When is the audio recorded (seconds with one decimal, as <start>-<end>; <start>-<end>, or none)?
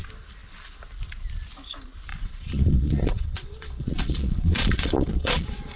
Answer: 0.0-2.1